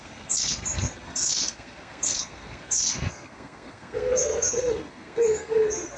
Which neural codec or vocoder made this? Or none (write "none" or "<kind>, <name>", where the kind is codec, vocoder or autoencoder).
codec, SNAC